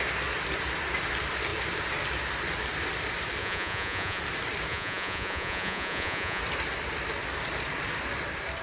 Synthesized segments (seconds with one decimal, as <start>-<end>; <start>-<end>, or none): 3.4-4.2; 4.7-6.4